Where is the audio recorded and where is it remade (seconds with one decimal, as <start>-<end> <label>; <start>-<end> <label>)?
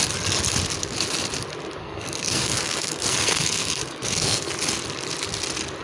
0.0-1.8 recorded; 1.8-4.5 remade; 4.5-5.8 recorded